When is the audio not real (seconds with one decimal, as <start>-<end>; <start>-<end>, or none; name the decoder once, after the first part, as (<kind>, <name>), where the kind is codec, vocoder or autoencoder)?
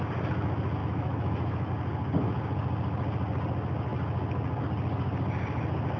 0.8-1.7 (autoencoder, DAC-VAE)